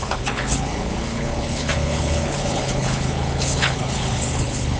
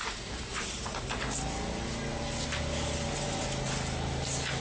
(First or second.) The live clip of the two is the second